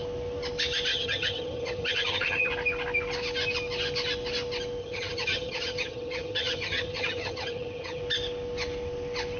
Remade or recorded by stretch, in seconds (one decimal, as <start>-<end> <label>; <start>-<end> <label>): 0.0-0.9 recorded; 0.9-2.5 remade; 2.5-4.8 recorded; 4.8-8.0 remade; 8.0-9.4 recorded